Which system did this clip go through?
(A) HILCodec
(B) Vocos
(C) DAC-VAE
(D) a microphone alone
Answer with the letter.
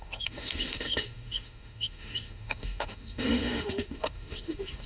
C